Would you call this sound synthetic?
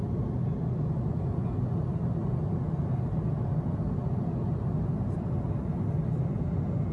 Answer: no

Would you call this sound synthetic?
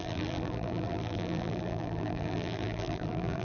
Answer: yes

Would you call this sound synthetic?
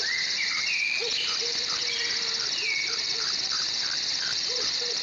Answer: yes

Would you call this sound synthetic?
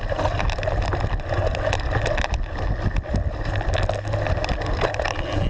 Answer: no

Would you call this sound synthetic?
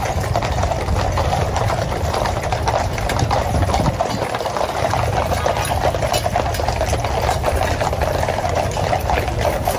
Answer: yes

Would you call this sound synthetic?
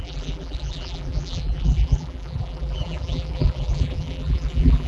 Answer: yes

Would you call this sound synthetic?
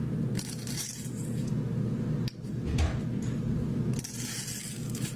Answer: no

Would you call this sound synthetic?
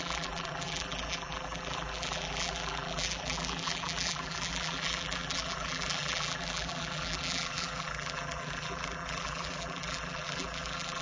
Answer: yes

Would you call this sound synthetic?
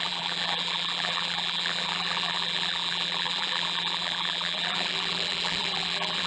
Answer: yes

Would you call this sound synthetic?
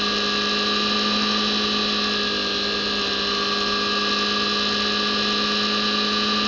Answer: no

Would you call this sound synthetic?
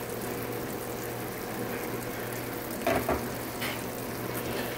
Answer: no